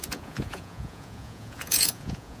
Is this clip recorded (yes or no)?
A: no